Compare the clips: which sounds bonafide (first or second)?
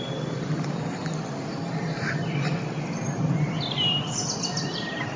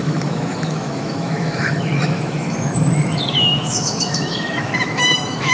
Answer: first